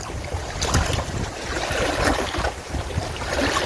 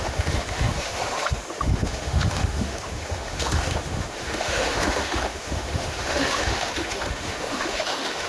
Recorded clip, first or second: first